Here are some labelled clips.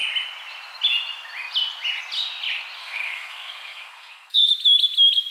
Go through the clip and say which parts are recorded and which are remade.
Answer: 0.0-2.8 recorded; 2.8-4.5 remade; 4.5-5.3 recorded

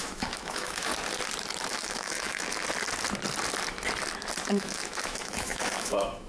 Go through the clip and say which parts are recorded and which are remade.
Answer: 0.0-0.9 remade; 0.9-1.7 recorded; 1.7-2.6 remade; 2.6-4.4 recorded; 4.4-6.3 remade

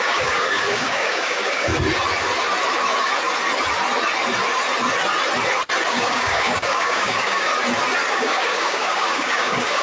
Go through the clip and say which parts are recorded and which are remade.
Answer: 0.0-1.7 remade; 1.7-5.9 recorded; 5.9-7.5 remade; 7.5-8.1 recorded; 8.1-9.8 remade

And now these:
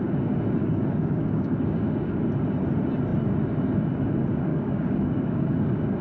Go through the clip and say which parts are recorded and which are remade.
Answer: 0.0-0.6 recorded; 0.6-2.2 remade; 2.2-4.5 recorded; 4.5-6.0 remade

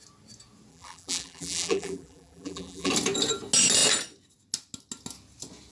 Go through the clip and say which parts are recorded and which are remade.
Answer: 0.0-0.7 recorded; 0.7-2.9 remade; 2.9-5.7 recorded